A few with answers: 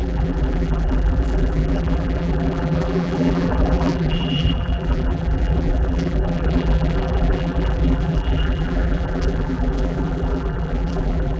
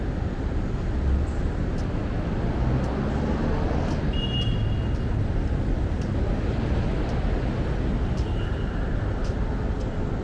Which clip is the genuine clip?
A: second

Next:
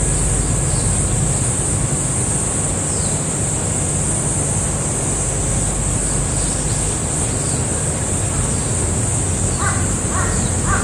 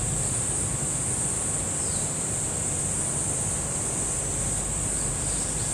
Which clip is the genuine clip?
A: first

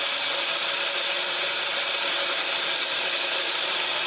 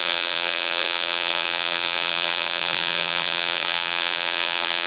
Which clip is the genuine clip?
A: first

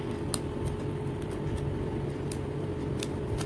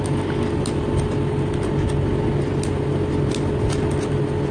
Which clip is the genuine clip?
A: second